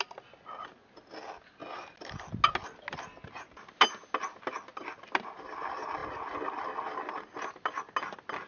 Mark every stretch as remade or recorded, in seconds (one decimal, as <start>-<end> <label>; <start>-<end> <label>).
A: 0.0-8.5 recorded